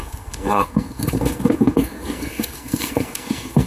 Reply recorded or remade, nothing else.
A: remade